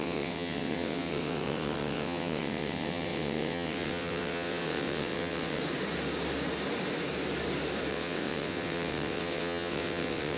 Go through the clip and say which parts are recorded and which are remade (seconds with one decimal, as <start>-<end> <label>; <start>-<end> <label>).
0.0-5.6 remade; 5.6-7.9 recorded; 7.9-10.4 remade